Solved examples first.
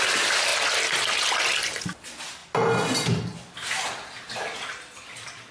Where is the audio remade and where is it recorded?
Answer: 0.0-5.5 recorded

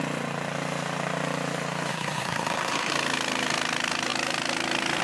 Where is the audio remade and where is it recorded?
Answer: 0.0-1.9 recorded; 1.9-2.9 remade; 2.9-5.0 recorded

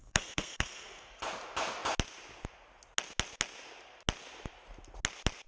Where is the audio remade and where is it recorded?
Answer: 0.0-1.2 remade; 1.2-5.5 recorded

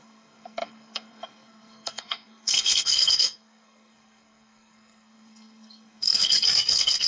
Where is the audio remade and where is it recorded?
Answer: 0.0-7.1 remade

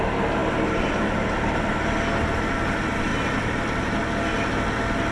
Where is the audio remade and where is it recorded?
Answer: 0.0-5.1 recorded

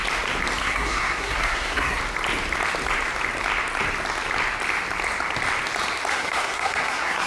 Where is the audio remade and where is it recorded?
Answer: 0.0-0.6 recorded; 0.6-2.0 remade; 2.0-6.1 recorded; 6.1-7.3 remade

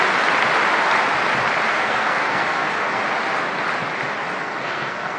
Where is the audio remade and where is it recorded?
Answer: 0.0-1.7 recorded; 1.7-3.0 remade; 3.0-4.4 recorded; 4.4-5.2 remade